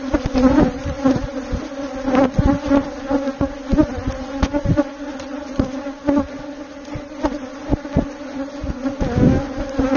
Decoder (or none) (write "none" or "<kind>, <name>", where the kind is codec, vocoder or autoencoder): none